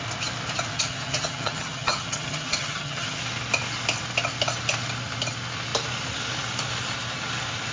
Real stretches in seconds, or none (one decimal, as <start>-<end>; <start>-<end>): 0.0-0.7; 3.2-7.7